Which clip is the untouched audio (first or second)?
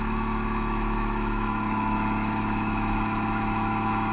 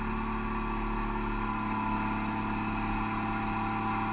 second